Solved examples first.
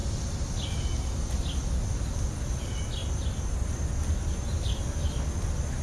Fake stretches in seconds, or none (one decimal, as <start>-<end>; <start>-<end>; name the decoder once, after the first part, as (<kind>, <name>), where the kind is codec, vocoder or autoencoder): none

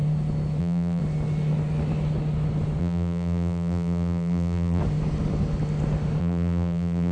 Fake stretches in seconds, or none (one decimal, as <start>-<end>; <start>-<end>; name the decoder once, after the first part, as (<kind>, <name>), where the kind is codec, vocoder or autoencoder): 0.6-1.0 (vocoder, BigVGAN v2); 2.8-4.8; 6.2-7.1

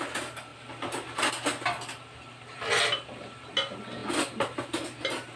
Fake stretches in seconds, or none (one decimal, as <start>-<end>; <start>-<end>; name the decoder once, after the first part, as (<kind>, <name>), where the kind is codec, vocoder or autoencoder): 0.5-1.3 (vocoder, BigVGAN v2)

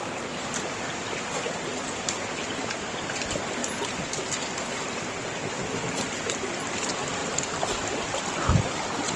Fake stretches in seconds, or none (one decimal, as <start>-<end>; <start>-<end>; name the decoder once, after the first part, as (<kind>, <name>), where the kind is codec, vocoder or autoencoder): 7.2-8.2 (vocoder, BigVGAN v2)